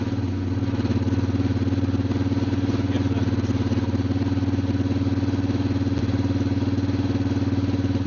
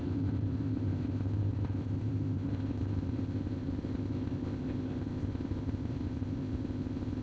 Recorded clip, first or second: first